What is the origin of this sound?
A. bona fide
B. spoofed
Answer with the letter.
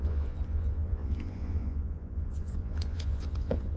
B